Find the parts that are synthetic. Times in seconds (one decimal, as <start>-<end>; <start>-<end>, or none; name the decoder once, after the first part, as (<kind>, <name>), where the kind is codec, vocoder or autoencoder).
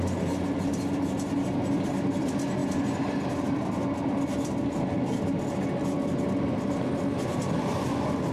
none